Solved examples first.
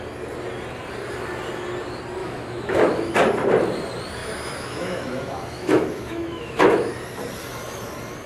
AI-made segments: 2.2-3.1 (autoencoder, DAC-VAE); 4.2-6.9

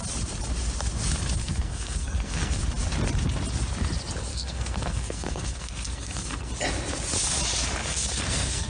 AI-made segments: 1.4-2.6 (codec, SNAC); 4.3-6.5; 7.8-8.7